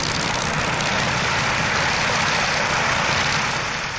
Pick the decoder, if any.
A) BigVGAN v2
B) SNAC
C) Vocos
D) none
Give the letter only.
D